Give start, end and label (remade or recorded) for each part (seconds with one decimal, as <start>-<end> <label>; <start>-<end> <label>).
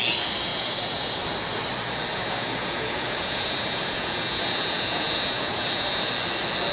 0.0-0.5 recorded; 0.5-1.2 remade; 1.2-2.1 recorded; 2.1-6.1 remade; 6.1-6.7 recorded